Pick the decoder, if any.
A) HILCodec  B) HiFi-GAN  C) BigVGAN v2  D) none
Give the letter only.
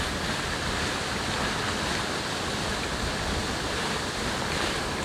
D